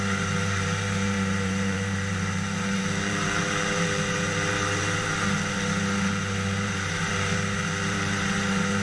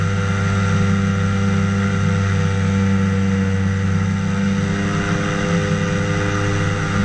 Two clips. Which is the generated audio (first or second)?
first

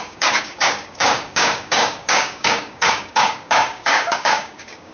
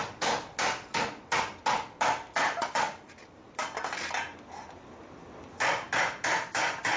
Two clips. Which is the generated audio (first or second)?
first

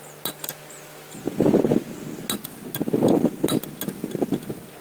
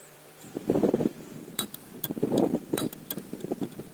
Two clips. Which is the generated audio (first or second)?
second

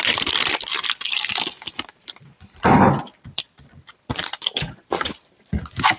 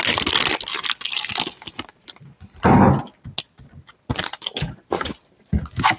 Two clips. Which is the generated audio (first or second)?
first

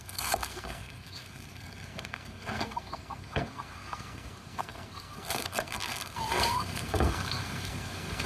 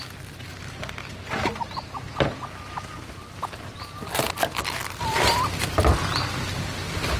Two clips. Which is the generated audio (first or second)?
first